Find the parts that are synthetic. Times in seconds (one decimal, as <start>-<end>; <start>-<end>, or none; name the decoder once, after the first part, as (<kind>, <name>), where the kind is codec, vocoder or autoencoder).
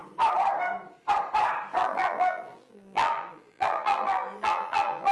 1.8-5.1 (vocoder, BigVGAN v2)